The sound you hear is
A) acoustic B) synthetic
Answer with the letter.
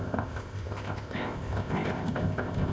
B